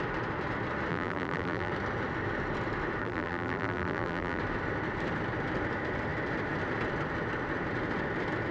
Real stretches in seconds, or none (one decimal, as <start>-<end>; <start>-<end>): 0.0-0.9; 1.7-3.0; 4.4-8.5

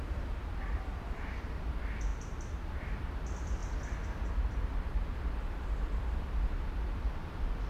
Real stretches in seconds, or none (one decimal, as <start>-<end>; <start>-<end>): 3.6-4.3

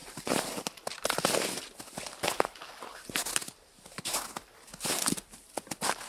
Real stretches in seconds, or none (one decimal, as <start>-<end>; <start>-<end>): 0.6-3.4; 4.1-6.1

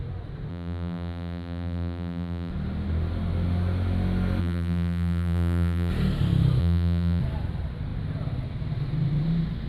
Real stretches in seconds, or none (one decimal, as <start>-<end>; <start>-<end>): 0.0-0.5; 2.5-4.4; 5.9-6.6; 7.2-9.7

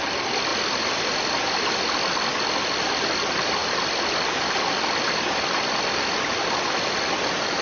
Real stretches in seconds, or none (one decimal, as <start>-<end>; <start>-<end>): 0.0-7.6